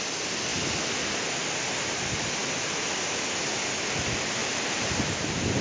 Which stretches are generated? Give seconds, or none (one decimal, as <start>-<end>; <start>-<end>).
4.4-5.0